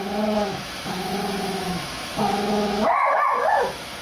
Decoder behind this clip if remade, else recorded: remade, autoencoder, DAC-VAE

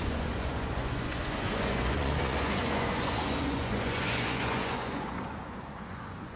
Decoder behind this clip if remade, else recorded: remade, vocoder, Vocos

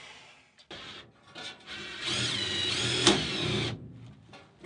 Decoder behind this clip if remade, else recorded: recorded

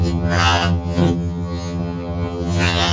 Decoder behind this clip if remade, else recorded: remade, vocoder, HiFi-GAN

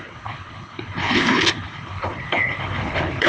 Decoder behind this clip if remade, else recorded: remade, codec, HILCodec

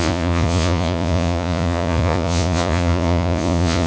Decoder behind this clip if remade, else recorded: remade, vocoder, Vocos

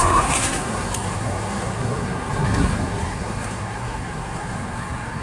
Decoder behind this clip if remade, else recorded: remade, codec, SNAC